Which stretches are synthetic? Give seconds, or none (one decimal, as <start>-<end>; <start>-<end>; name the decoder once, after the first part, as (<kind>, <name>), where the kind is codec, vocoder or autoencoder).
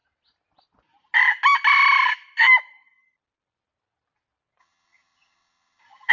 4.6-6.1 (vocoder, HiFi-GAN)